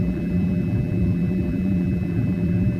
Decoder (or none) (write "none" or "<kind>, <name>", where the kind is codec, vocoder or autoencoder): vocoder, BigVGAN v2